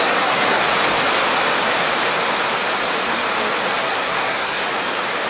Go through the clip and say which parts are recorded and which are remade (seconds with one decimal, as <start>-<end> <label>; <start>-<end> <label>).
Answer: 0.0-0.6 remade; 0.6-3.8 recorded; 3.8-4.6 remade; 4.6-5.3 recorded